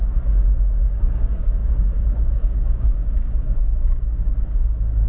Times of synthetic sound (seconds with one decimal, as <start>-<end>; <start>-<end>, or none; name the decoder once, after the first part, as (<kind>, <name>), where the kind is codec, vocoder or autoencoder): 0.0-5.1 (codec, DAC)